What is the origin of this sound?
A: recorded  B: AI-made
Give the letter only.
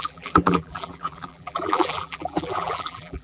B